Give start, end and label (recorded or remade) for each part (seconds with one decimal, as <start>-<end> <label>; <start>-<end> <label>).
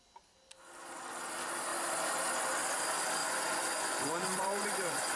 0.0-3.2 recorded; 3.2-5.2 remade